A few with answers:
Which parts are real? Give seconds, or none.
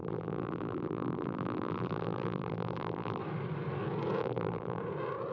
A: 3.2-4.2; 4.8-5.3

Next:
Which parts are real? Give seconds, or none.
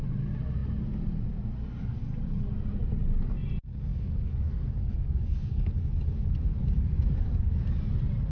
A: 0.0-3.9; 5.7-6.6; 7.6-8.3